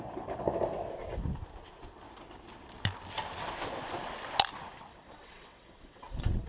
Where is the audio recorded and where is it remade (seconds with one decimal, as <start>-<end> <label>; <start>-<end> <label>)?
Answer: 0.0-4.9 recorded; 4.9-6.5 remade